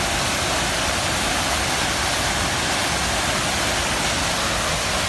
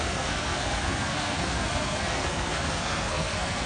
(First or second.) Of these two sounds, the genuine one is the first